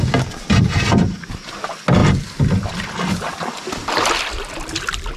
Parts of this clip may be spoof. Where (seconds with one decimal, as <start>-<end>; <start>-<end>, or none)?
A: none